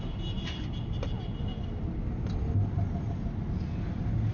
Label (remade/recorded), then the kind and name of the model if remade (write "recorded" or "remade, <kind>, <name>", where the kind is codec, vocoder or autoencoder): recorded